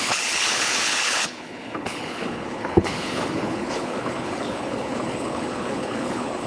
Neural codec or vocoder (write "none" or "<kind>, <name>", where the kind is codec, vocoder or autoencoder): codec, HILCodec